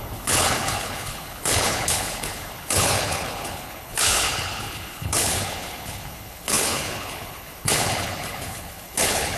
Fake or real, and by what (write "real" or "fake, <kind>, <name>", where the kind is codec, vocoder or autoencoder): fake, codec, HILCodec